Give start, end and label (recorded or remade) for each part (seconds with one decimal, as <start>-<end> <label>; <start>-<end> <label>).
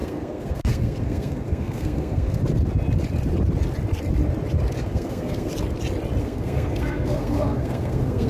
0.0-2.4 remade; 2.4-4.8 recorded; 4.8-5.5 remade; 5.5-6.2 recorded; 6.2-8.3 remade